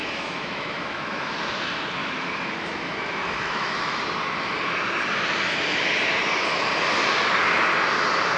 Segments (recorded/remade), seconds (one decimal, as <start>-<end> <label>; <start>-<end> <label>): 0.0-1.3 remade; 1.3-2.0 recorded; 2.0-4.0 remade; 4.0-8.4 recorded